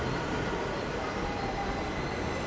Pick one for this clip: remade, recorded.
recorded